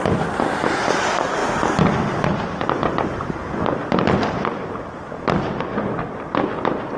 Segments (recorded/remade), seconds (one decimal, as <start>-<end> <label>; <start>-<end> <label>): 0.0-7.0 recorded